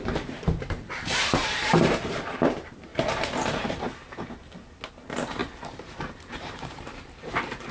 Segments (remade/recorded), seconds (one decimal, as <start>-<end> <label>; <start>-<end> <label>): 0.0-2.9 remade; 2.9-4.9 recorded; 4.9-5.4 remade; 5.4-6.0 recorded; 6.0-7.7 remade